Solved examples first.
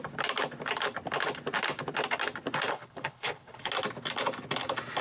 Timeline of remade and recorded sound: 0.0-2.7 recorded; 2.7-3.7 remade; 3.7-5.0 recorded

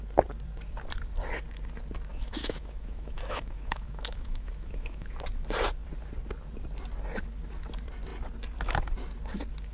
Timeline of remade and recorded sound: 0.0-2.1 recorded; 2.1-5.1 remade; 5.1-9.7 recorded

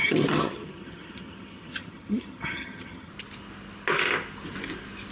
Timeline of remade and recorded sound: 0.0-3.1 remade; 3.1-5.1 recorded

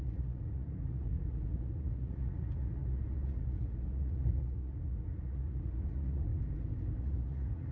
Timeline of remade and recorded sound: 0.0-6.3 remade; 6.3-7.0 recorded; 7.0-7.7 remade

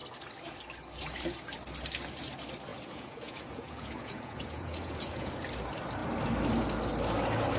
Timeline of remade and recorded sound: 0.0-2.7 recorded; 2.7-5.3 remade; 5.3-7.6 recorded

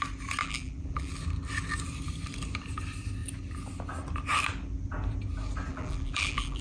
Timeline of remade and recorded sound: 0.0-0.4 recorded; 0.4-1.1 remade; 1.1-5.7 recorded; 5.7-6.6 remade

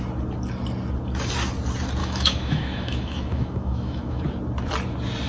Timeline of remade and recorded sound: 0.0-2.0 recorded; 2.0-4.2 remade; 4.2-5.3 recorded

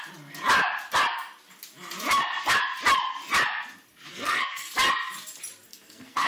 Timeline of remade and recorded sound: 0.0-4.1 recorded; 4.1-4.7 remade; 4.7-5.7 recorded; 5.7-6.3 remade